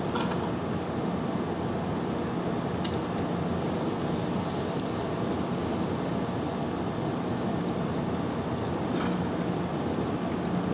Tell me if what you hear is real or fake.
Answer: real